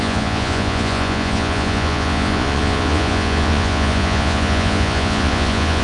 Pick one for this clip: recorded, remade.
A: remade